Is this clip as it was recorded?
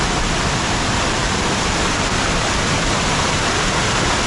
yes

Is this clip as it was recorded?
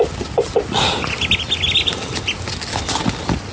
yes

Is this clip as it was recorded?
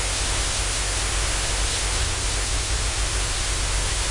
no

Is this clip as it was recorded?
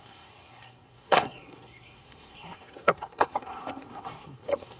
no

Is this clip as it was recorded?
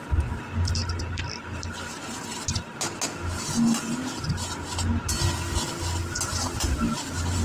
yes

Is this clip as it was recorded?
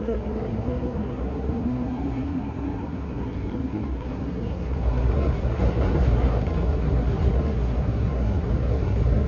no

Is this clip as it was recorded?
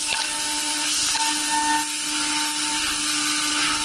yes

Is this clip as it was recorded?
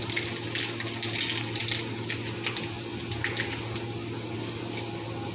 yes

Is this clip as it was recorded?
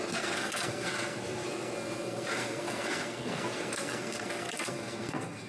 no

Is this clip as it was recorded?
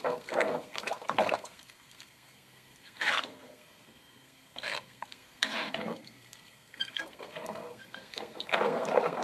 no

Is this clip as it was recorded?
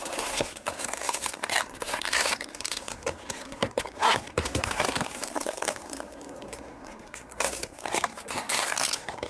no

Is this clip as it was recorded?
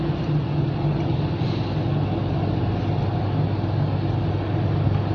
yes